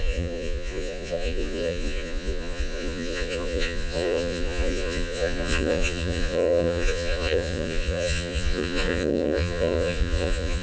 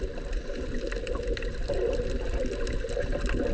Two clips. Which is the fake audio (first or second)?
first